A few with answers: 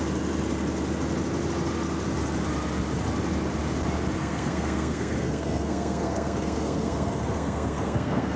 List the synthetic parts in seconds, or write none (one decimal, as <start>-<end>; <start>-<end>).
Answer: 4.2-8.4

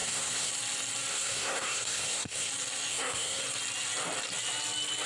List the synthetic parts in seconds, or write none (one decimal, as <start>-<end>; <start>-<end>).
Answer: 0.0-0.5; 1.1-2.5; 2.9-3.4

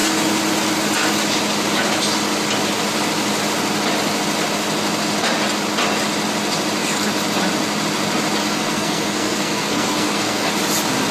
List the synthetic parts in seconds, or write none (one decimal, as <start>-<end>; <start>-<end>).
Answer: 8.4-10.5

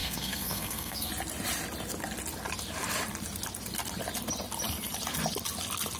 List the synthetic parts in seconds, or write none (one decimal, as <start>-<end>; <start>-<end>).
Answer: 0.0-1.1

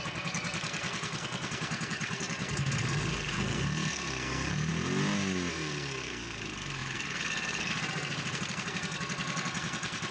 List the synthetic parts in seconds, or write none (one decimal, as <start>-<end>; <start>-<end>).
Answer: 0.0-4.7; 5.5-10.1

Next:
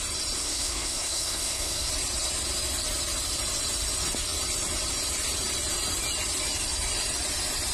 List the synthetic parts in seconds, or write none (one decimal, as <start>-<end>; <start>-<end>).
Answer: 0.4-1.9